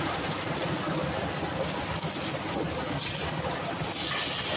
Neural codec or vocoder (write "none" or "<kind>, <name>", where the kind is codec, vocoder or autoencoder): none